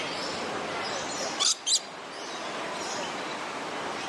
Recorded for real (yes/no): yes